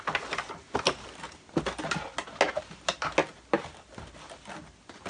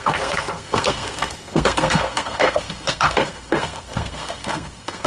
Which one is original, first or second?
first